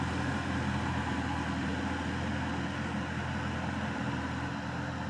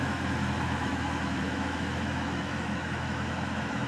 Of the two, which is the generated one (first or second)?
second